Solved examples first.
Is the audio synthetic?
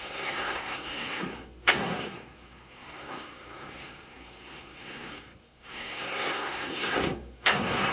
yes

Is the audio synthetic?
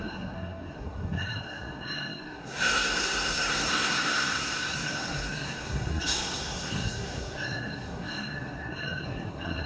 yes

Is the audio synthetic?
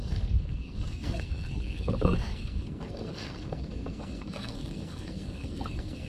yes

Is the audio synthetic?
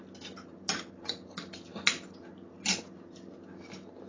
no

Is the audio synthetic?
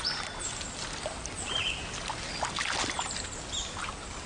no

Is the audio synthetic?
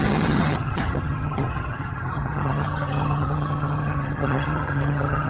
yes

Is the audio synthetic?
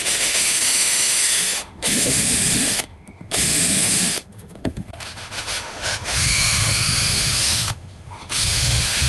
yes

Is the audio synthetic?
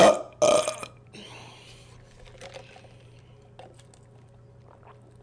no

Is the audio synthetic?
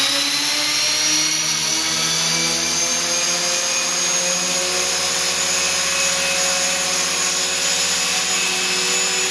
no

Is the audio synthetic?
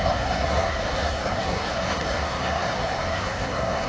yes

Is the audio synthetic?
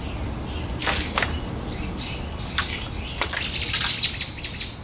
no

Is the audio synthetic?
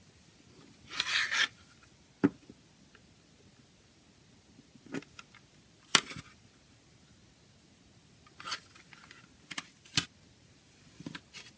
no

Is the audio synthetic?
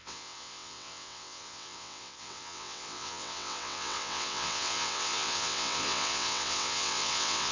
yes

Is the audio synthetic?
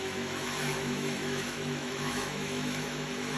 yes